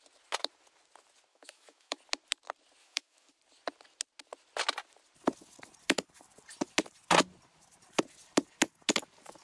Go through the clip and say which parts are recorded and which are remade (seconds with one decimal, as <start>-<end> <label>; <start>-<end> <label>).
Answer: 0.0-1.3 recorded; 1.3-2.0 remade; 2.0-2.8 recorded; 2.8-3.3 remade; 3.3-9.4 recorded